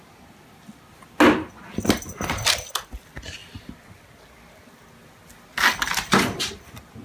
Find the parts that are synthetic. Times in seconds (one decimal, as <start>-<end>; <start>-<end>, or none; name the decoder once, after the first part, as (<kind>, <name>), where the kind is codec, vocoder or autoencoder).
none